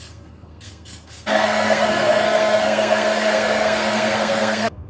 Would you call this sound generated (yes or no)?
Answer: yes